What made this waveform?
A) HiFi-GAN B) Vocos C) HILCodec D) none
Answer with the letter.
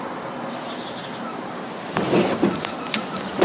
D